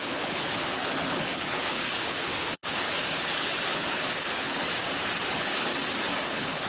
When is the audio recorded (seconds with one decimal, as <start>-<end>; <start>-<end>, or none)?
4.5-5.3; 5.7-6.3